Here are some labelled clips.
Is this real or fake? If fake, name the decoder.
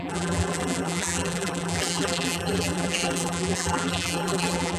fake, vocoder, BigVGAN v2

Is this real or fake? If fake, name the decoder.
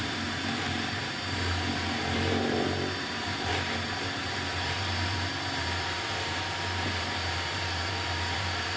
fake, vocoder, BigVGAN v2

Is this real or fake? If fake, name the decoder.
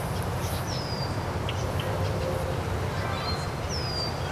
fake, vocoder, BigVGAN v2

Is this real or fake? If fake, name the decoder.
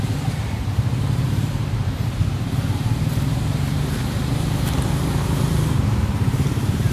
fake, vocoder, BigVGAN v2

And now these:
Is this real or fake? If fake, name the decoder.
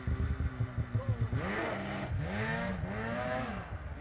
real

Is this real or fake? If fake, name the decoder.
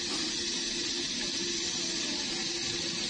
real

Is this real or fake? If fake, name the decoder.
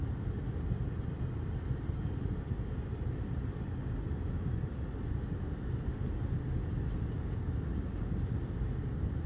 real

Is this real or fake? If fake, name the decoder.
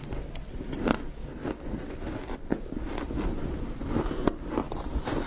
real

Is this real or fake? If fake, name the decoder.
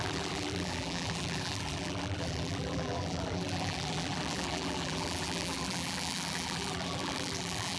fake, vocoder, BigVGAN v2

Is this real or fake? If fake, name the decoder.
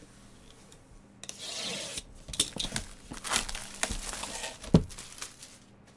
real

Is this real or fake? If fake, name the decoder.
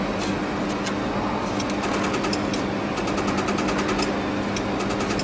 real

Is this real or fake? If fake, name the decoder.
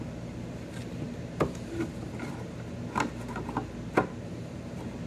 fake, vocoder, BigVGAN v2